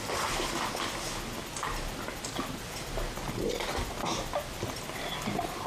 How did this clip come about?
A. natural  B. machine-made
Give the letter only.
A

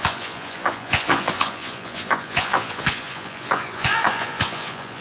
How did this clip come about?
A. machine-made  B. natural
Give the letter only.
A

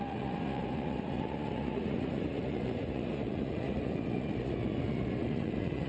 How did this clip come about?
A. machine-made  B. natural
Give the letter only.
A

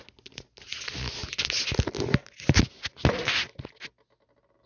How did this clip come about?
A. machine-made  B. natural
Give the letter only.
B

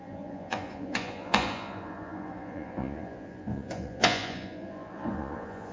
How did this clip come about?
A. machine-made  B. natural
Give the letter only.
A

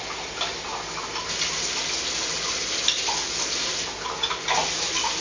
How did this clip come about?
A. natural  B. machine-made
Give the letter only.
A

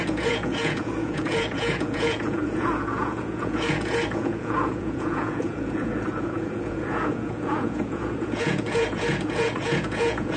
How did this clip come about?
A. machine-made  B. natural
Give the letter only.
A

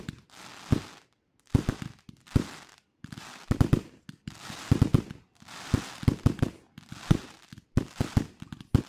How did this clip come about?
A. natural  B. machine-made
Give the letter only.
A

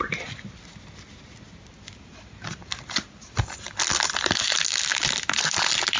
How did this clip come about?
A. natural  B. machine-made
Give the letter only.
A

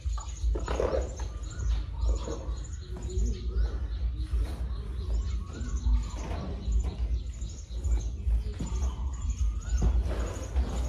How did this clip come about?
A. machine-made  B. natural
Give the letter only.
B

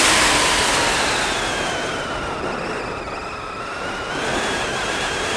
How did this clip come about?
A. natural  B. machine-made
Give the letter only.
A